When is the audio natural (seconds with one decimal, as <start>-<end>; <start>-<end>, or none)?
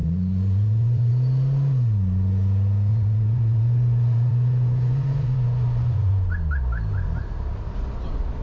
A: 1.1-2.9; 6.1-8.4